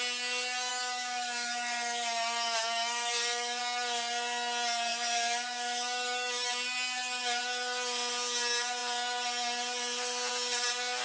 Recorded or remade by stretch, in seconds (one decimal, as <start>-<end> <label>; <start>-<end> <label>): 0.0-0.7 recorded; 0.7-3.6 remade; 3.6-4.9 recorded; 4.9-7.4 remade; 7.4-11.0 recorded